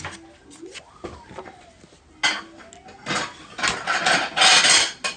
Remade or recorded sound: recorded